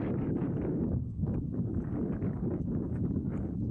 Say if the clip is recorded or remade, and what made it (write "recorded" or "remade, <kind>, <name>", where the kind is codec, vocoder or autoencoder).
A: remade, codec, DAC